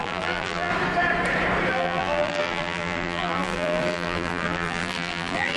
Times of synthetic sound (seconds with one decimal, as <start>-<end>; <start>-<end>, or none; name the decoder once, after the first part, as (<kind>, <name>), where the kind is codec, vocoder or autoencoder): 0.0-0.7 (vocoder, BigVGAN v2); 1.7-5.6